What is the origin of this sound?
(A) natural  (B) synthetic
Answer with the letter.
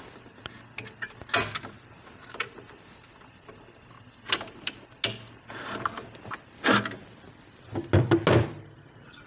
A